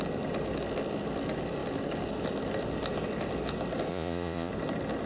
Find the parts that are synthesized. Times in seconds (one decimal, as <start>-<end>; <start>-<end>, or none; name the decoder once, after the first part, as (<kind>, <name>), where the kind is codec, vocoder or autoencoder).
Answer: 3.9-4.5 (vocoder, Vocos)